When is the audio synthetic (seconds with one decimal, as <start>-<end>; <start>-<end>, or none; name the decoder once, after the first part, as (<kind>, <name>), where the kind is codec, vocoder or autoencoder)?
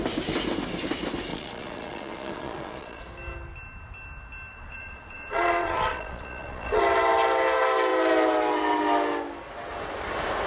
1.3-3.0 (vocoder, Vocos); 4.5-6.8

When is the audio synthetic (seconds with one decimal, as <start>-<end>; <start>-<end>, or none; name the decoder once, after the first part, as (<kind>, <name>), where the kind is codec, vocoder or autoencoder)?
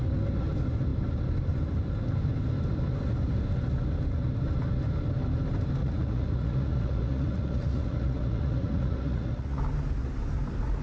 5.8-9.6 (vocoder, Vocos)